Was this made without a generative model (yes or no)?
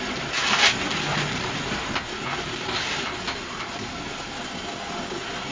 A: yes